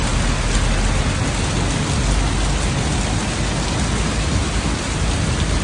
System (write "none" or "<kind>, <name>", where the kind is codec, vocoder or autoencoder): none